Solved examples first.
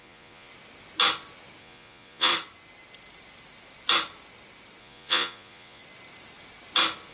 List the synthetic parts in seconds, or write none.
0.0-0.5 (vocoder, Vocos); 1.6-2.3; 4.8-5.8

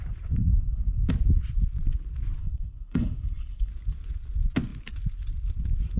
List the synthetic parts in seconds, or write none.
0.4-1.1 (codec, HILCodec); 2.4-3.7

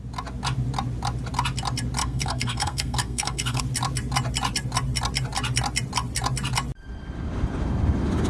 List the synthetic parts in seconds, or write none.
2.0-3.6 (codec, SNAC)

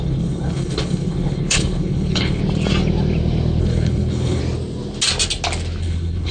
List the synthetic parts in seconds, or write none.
0.0-2.4 (codec, HILCodec); 3.6-4.4; 5.8-6.3

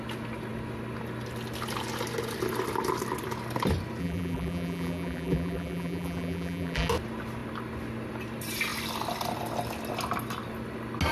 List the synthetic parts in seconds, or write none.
4.0-6.9 (vocoder, BigVGAN v2)

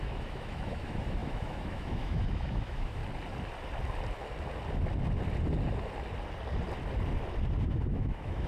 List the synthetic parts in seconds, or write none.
0.0-3.0 (autoencoder, DAC-VAE); 7.7-8.5

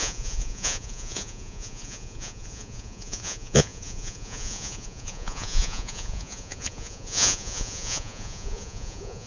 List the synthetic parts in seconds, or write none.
0.0-9.3 (vocoder, Vocos)